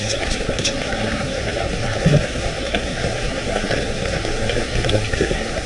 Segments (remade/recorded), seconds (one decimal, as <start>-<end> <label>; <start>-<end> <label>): 0.0-5.7 remade